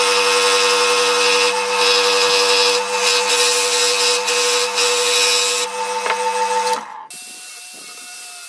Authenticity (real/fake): real